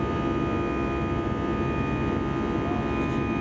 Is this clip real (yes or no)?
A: yes